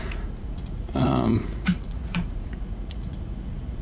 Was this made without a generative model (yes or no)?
no